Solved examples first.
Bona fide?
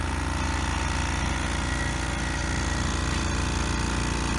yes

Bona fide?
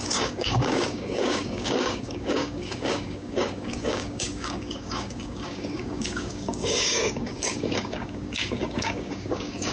no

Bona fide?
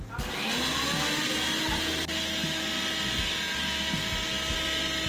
yes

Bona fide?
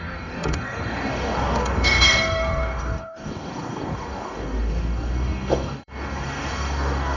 no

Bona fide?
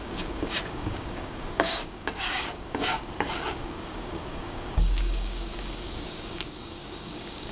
no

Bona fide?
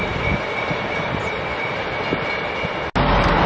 yes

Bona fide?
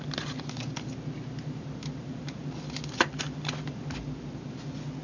yes